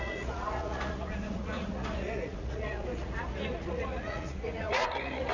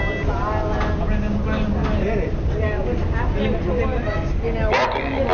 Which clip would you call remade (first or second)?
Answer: first